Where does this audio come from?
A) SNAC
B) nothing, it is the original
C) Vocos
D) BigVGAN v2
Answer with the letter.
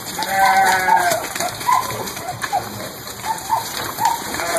D